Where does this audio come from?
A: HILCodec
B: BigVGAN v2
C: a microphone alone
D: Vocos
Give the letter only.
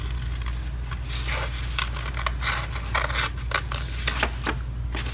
C